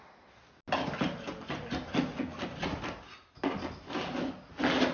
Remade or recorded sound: recorded